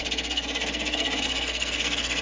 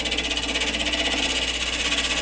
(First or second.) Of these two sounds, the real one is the second